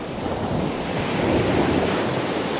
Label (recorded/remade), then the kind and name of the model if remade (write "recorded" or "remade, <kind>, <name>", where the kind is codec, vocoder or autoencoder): recorded